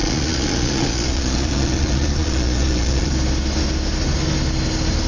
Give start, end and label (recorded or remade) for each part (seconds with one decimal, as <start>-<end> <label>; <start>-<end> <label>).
0.0-3.1 remade; 3.1-5.1 recorded